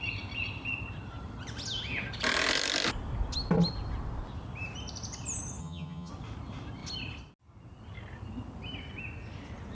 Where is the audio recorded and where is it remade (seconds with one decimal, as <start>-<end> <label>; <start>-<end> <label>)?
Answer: 0.0-5.6 recorded; 5.6-6.1 remade; 6.1-9.7 recorded